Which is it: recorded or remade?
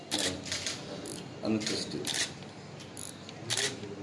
recorded